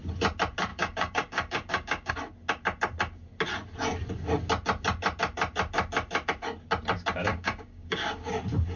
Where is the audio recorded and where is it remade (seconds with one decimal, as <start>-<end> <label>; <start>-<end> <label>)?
0.0-0.7 recorded; 0.7-2.1 remade; 2.1-7.3 recorded; 7.3-8.3 remade; 8.3-8.8 recorded